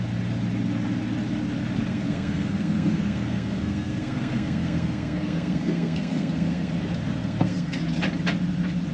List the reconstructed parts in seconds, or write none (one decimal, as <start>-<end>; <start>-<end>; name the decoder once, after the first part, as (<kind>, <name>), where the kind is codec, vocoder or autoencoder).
1.9-6.7 (codec, SNAC); 7.2-7.8

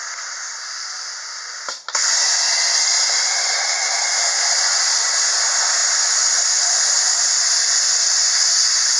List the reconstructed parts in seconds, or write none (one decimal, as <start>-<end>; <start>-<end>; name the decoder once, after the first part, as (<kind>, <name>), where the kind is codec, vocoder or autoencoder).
none

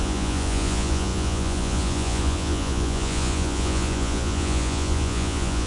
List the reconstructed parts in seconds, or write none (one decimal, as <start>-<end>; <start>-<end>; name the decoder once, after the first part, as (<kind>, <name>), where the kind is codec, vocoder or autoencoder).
0.0-5.7 (vocoder, Vocos)

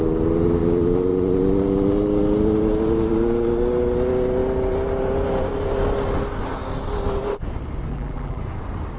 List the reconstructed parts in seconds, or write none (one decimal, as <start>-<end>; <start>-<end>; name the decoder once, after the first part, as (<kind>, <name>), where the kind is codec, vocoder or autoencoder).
7.9-8.4 (vocoder, BigVGAN v2)

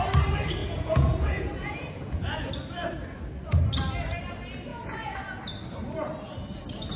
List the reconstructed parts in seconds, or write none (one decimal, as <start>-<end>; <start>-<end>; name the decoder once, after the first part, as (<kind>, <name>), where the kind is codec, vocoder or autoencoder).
0.6-2.5 (vocoder, Vocos); 4.7-5.4